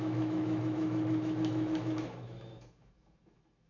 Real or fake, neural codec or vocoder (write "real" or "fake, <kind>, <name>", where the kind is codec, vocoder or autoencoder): fake, autoencoder, DAC-VAE